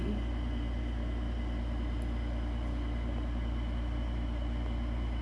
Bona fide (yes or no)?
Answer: yes